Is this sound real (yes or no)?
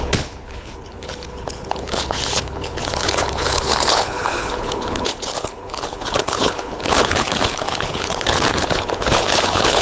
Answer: no